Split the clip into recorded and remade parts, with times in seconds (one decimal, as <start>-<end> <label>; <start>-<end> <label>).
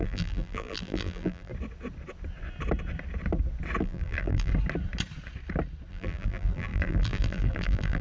0.0-1.5 remade; 1.5-3.8 recorded; 3.8-4.5 remade; 4.5-5.9 recorded; 5.9-8.0 remade